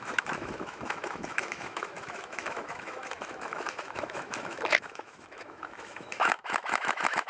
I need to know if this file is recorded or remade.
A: remade